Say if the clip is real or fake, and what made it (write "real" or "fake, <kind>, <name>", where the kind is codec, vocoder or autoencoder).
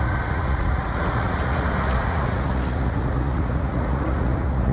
fake, vocoder, Vocos